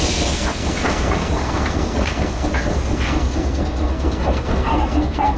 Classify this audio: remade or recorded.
remade